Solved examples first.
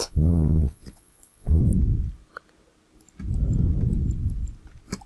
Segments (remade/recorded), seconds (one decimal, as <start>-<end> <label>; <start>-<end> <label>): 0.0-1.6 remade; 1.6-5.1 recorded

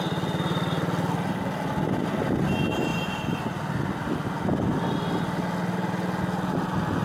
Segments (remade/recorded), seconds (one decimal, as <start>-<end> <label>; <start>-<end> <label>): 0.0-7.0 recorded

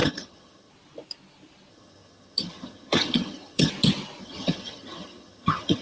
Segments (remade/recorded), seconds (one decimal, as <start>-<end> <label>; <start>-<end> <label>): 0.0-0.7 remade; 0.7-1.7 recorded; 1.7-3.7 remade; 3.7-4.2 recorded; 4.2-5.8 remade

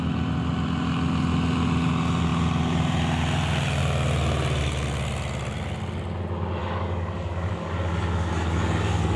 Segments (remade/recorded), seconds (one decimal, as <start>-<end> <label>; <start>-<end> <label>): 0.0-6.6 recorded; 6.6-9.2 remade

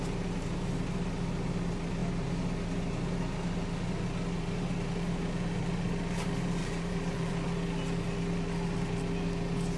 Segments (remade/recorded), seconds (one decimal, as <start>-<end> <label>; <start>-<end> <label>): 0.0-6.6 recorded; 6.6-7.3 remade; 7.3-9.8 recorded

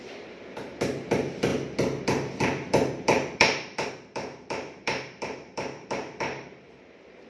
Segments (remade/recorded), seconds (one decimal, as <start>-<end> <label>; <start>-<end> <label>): 0.0-1.5 remade; 1.5-2.0 recorded; 2.0-7.3 remade

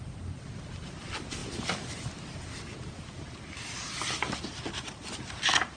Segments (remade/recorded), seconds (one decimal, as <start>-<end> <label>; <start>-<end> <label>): 0.0-5.8 recorded

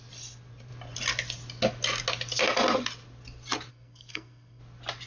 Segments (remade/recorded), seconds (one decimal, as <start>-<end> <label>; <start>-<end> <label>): 0.0-3.7 recorded; 3.7-4.6 remade; 4.6-5.1 recorded